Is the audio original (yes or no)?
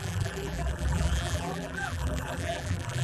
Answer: no